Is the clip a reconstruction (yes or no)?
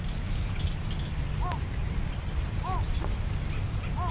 no